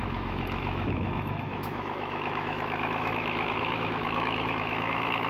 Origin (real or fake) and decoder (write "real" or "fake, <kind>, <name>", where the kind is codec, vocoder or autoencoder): fake, autoencoder, DAC-VAE